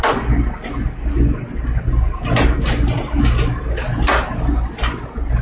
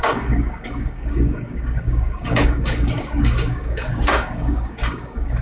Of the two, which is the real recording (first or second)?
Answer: first